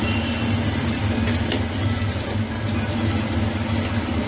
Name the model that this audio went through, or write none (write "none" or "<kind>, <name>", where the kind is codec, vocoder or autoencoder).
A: none